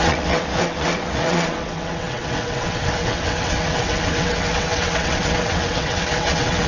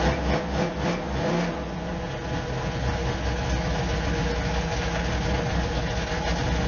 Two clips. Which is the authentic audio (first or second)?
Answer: second